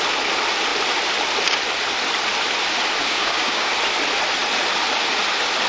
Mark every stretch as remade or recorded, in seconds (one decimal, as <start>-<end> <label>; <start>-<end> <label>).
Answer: 0.0-3.0 recorded; 3.0-3.7 remade; 3.7-5.7 recorded